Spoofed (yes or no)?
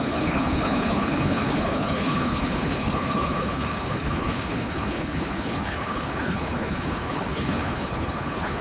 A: yes